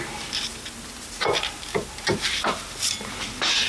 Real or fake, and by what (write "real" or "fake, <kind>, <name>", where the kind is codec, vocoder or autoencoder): real